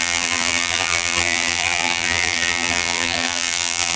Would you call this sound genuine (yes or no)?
no